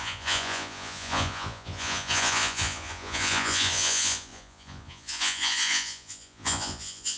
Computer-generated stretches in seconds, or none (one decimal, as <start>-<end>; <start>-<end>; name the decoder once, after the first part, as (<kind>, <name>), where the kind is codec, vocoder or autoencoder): 0.0-7.2 (vocoder, Vocos)